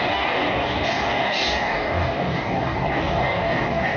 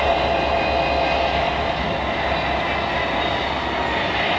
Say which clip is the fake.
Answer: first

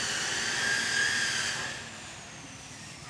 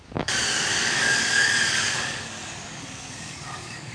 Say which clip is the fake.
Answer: second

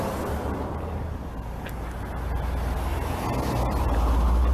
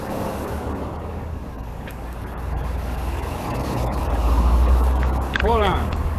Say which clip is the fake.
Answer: second